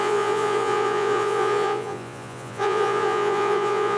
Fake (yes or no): yes